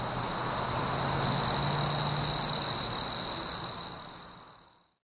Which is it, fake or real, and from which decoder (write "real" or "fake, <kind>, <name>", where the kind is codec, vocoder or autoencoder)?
real